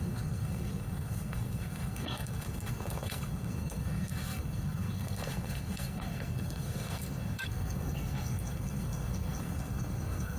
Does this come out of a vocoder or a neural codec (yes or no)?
yes